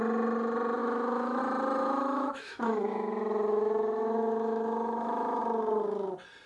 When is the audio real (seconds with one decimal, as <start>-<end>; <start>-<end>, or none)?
0.0-0.8; 1.4-1.8; 5.4-6.5